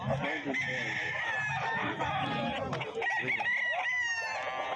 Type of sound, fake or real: real